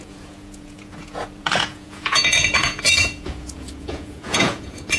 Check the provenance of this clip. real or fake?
fake